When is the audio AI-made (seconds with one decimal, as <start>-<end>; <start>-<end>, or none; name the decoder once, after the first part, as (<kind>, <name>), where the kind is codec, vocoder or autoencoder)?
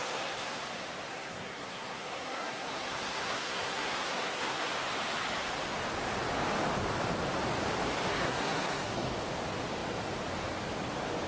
0.0-0.6 (codec, SNAC); 1.1-4.7; 8.1-9.1